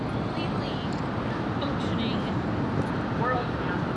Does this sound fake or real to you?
real